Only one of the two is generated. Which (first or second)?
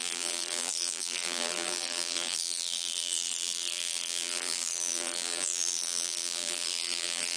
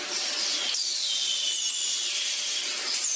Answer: first